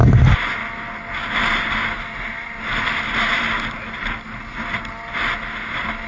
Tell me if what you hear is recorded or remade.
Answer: recorded